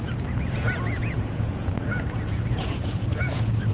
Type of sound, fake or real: fake